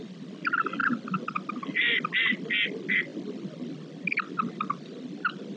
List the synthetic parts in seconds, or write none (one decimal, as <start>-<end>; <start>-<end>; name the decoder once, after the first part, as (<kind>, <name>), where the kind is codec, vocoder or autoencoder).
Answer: none